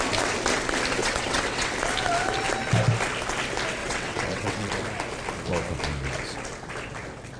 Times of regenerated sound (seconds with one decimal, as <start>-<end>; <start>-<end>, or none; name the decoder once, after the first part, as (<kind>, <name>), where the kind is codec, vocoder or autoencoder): 1.0-1.7 (vocoder, WaveNeXt); 3.8-4.7